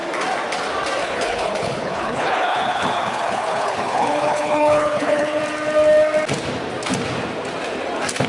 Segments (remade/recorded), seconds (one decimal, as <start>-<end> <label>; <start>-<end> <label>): 0.0-1.0 recorded; 1.0-5.4 remade; 5.4-8.3 recorded